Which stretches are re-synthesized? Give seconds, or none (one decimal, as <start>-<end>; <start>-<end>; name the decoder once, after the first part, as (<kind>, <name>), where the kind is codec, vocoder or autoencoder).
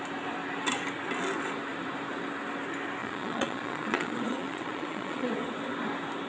3.0-5.3 (vocoder, Vocos)